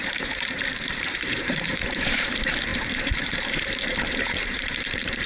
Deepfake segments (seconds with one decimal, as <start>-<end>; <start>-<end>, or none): 0.0-5.3